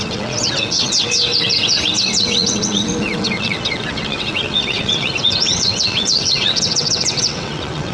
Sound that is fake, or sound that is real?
fake